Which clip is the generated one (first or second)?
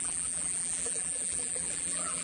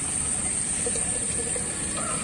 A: first